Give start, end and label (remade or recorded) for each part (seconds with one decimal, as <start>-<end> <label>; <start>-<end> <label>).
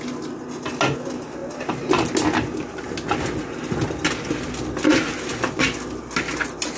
0.0-6.8 recorded